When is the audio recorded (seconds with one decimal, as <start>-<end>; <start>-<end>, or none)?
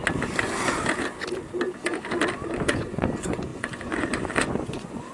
0.0-2.6